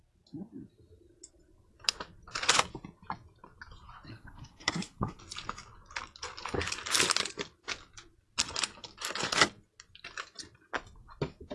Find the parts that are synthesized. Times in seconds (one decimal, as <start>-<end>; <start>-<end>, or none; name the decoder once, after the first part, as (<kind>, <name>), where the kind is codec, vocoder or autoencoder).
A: 4.1-5.2 (codec, SNAC)